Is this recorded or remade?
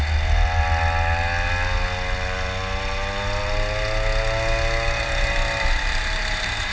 recorded